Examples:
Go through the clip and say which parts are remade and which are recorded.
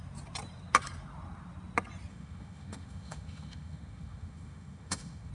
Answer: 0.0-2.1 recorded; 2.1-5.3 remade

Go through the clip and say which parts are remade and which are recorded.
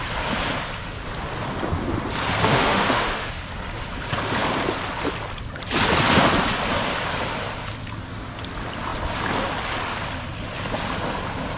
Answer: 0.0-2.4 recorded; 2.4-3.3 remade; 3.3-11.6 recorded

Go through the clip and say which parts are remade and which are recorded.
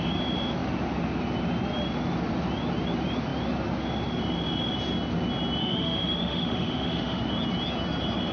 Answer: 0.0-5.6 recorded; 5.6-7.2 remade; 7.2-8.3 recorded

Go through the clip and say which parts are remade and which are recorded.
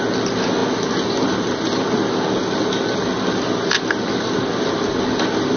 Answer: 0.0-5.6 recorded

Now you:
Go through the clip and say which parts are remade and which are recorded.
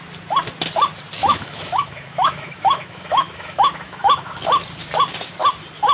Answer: 0.0-1.2 recorded; 1.2-4.3 remade; 4.3-5.9 recorded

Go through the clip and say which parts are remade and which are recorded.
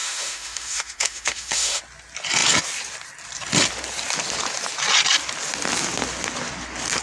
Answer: 0.0-1.8 remade; 1.8-7.0 recorded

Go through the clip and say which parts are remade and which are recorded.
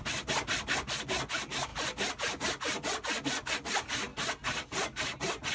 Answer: 0.0-5.5 recorded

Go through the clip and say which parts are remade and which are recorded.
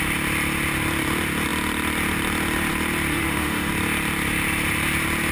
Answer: 0.0-3.1 recorded; 3.1-3.7 remade; 3.7-5.3 recorded